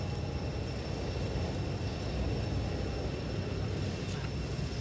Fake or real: real